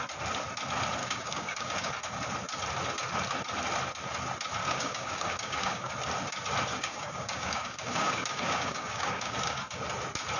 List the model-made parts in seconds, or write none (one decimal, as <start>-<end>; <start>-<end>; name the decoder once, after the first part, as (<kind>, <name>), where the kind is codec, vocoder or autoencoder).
1.0-1.9 (codec, DAC); 4.6-5.9; 6.7-9.8